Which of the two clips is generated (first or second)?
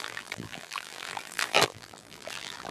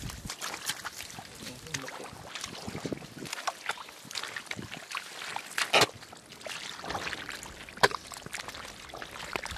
first